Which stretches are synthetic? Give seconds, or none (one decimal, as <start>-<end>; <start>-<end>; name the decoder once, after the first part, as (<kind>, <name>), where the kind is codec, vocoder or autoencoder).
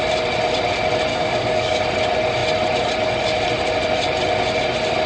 1.1-1.8 (codec, DAC)